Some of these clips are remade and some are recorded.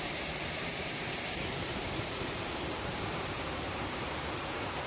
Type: remade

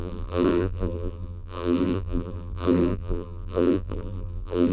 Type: remade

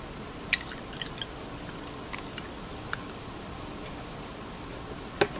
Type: recorded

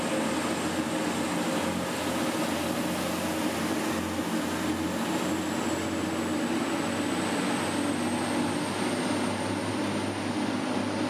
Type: recorded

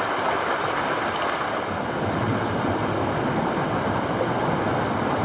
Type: recorded